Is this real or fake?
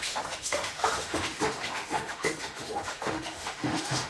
fake